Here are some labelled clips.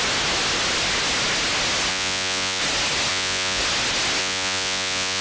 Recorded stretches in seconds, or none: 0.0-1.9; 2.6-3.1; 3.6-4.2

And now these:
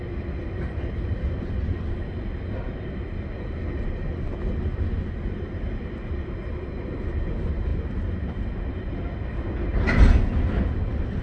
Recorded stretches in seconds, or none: 0.0-11.2

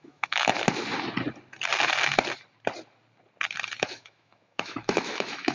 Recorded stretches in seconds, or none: 0.5-3.8

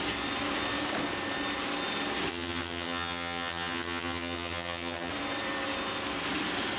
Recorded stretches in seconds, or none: 0.0-2.3; 5.1-6.8

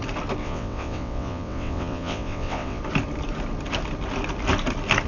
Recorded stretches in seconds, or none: 0.0-0.4; 2.8-5.1

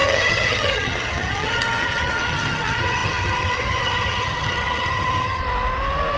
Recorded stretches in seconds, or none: 5.4-6.2

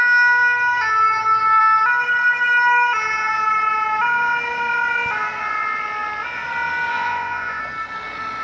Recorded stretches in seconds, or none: 0.0-6.9; 7.6-8.4